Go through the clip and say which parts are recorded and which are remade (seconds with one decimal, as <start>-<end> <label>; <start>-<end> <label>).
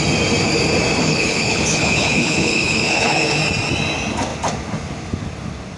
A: 0.0-1.0 recorded; 1.0-3.4 remade; 3.4-5.8 recorded